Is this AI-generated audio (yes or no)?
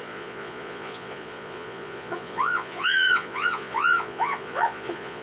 yes